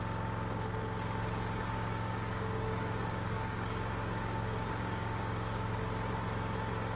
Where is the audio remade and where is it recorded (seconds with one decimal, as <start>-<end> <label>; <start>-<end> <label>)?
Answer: 0.0-1.6 recorded; 1.6-5.8 remade; 5.8-7.0 recorded